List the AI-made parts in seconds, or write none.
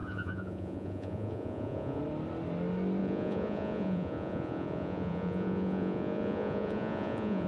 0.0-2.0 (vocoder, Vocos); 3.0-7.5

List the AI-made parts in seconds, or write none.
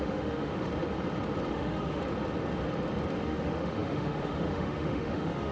0.0-0.7 (autoencoder, DAC-VAE); 1.5-2.0; 3.2-5.5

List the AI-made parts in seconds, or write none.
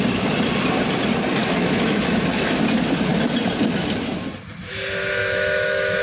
1.4-2.5 (autoencoder, DAC-VAE); 5.2-6.0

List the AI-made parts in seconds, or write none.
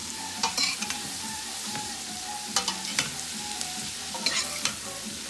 0.0-2.1 (vocoder, BigVGAN v2)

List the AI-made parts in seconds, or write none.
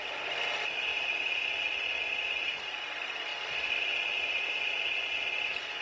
0.9-1.4 (vocoder, BigVGAN v2)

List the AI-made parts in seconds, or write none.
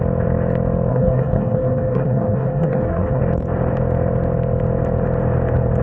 0.9-3.2 (codec, SNAC)